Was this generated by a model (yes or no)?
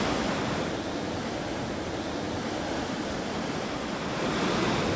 no